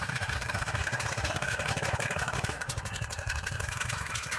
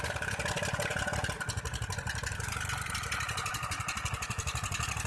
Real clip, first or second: second